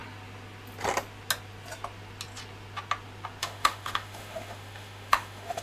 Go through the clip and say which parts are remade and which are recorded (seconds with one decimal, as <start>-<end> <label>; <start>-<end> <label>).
0.0-3.4 recorded; 3.4-5.6 remade